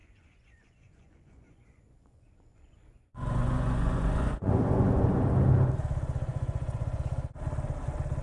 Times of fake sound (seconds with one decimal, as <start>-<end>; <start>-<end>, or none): 0.0-4.9; 6.3-7.0